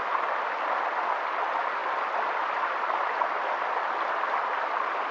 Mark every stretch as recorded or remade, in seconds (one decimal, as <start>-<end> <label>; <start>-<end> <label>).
0.0-5.1 recorded